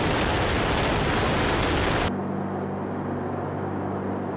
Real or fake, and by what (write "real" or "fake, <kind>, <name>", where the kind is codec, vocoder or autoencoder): real